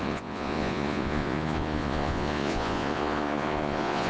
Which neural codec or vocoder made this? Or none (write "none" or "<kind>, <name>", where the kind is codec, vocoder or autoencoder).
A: vocoder, Vocos